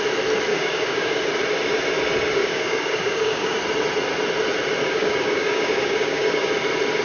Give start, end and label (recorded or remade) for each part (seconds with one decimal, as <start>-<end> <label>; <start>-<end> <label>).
0.0-0.5 recorded; 0.5-1.2 remade; 1.2-2.4 recorded; 2.4-3.6 remade; 3.6-4.8 recorded; 4.8-6.5 remade; 6.5-7.0 recorded